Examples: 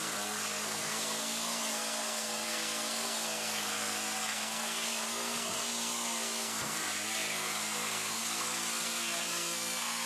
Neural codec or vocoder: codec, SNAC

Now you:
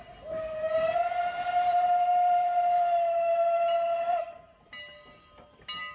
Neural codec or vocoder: none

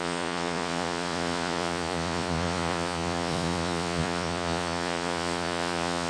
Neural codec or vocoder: vocoder, Vocos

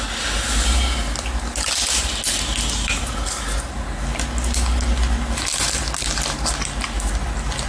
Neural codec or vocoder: none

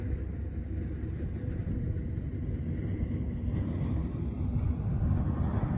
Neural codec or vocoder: none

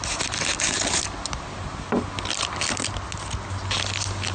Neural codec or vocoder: none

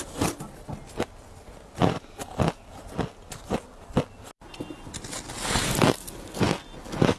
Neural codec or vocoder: none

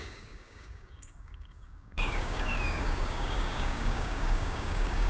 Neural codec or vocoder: codec, DAC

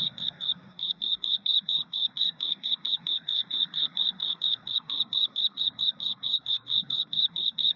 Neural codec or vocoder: codec, SNAC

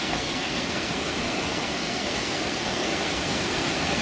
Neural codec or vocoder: codec, SNAC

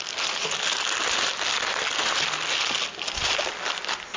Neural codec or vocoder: none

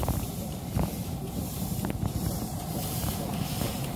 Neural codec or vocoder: vocoder, BigVGAN v2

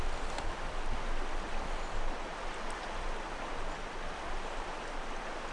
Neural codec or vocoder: none